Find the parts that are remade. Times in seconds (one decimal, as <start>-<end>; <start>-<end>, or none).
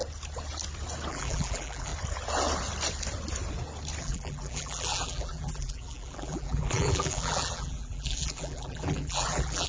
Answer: 1.1-1.9; 4.0-9.7